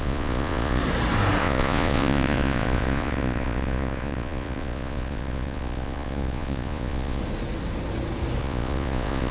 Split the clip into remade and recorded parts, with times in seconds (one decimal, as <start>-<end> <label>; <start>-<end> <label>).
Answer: 0.0-0.8 remade; 0.8-1.4 recorded; 1.4-7.2 remade; 7.2-8.4 recorded; 8.4-9.3 remade